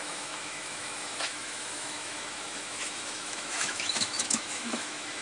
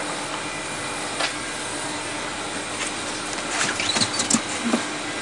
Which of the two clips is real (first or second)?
second